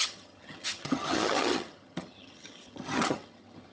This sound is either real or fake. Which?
fake